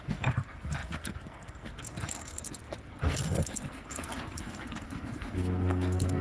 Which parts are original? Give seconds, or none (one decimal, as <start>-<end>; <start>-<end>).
none